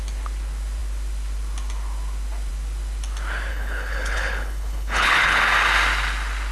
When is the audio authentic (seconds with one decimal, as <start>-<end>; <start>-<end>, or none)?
0.0-3.5; 5.4-6.5